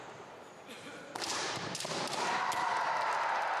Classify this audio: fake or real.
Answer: fake